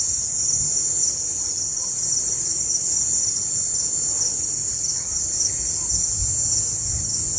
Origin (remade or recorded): recorded